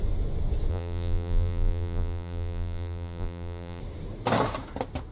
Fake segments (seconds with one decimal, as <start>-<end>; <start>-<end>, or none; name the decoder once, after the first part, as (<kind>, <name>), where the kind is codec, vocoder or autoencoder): 0.7-3.8 (vocoder, BigVGAN v2)